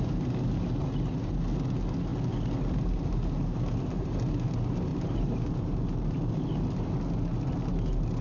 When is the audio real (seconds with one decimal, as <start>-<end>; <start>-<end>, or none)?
0.0-4.9; 6.4-8.2